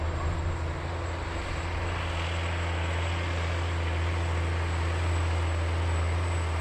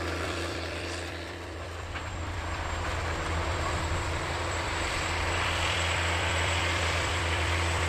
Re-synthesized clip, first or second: second